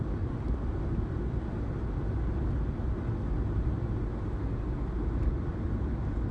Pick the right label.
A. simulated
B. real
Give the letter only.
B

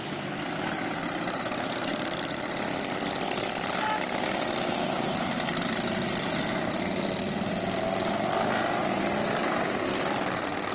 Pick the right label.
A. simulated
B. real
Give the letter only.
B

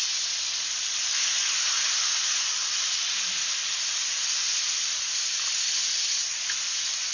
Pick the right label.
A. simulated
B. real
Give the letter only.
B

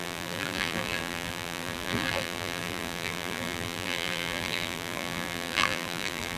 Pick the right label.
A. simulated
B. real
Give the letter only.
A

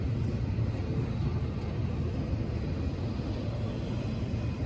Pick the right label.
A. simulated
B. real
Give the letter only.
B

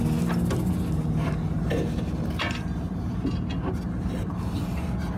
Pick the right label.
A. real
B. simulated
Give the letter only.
A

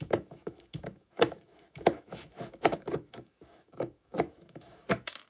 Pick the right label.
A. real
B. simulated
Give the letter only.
B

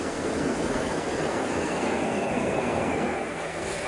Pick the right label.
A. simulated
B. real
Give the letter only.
A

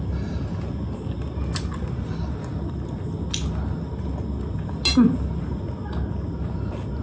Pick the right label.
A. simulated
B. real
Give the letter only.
B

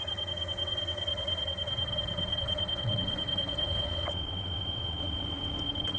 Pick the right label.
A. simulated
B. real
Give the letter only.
A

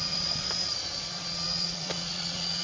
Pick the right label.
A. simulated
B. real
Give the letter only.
A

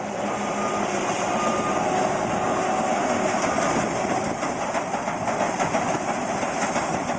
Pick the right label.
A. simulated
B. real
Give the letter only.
B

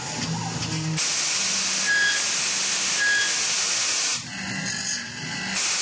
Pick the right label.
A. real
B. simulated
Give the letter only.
A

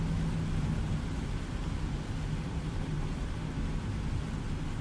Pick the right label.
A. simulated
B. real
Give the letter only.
B